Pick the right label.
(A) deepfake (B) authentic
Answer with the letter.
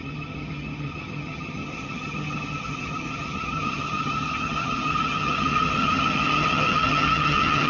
A